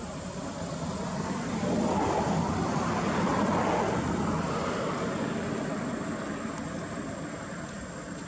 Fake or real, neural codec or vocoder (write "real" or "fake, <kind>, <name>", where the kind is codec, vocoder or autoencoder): fake, vocoder, BigVGAN v2